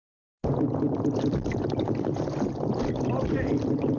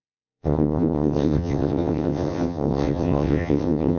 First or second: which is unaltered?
first